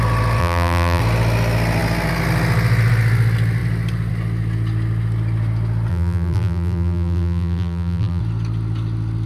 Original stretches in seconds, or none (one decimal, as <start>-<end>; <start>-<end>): 0.0-0.4; 1.0-5.9; 8.2-9.3